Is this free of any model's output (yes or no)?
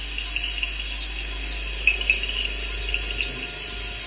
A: yes